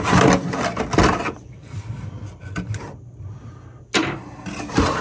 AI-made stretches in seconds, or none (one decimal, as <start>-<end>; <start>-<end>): none